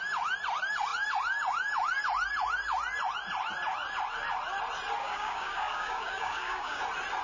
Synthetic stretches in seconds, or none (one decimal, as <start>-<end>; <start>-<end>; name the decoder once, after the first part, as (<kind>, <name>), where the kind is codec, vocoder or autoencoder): 5.0-6.8 (codec, DAC)